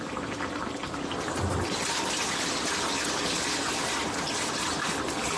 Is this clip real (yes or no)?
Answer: yes